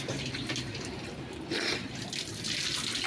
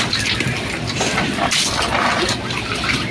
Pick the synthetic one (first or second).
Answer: second